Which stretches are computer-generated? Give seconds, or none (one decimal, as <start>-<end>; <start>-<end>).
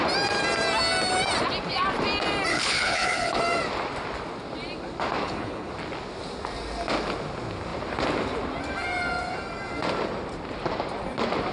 2.5-3.4; 5.2-5.7